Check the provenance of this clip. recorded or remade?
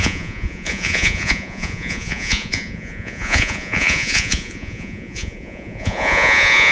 remade